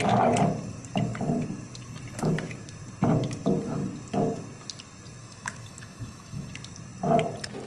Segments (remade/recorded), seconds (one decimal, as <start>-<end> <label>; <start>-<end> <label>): 0.0-5.2 recorded; 5.2-6.5 remade; 6.5-7.7 recorded

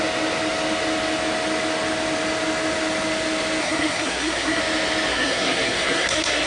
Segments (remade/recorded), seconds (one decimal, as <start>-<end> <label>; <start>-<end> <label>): 0.0-3.6 recorded; 3.6-4.6 remade; 4.6-5.1 recorded; 5.1-6.5 remade

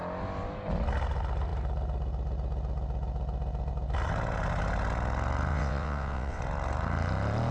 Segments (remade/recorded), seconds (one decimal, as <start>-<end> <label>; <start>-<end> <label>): 0.0-5.5 recorded; 5.5-6.4 remade; 6.4-7.5 recorded